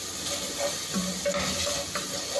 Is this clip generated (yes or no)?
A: no